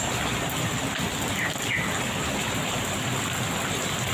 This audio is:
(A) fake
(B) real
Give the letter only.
B